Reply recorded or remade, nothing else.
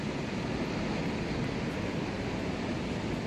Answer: recorded